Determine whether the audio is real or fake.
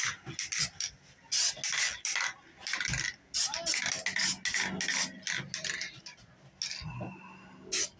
real